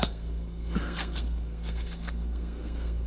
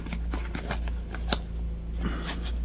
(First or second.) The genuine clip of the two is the second